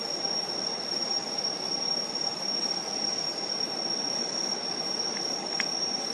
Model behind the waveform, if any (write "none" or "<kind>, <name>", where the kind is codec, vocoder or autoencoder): none